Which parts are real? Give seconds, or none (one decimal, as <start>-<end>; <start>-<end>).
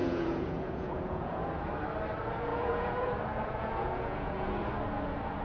1.5-2.5; 4.5-5.4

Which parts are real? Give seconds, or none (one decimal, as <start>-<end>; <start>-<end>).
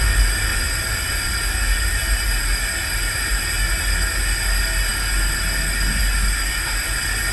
0.0-7.3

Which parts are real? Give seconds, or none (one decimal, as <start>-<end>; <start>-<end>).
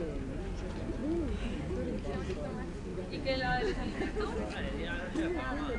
0.0-5.8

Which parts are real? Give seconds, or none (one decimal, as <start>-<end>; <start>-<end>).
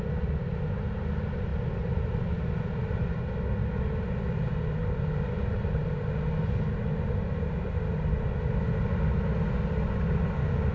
0.0-10.7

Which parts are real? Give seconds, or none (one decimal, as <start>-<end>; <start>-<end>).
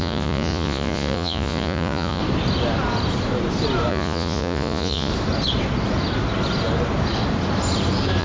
2.2-3.9; 5.1-8.2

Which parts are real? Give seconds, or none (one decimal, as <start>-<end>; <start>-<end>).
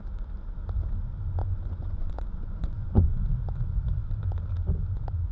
0.0-1.4; 3.2-5.3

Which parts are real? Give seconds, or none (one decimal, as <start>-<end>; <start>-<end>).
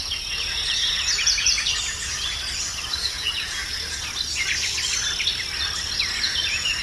1.5-2.9; 3.6-6.2